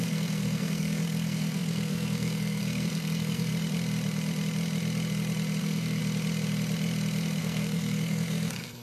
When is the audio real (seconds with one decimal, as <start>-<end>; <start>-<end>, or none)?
3.5-5.6; 6.0-7.4